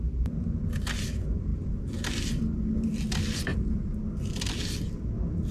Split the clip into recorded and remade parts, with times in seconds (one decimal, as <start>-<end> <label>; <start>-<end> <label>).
0.0-5.5 recorded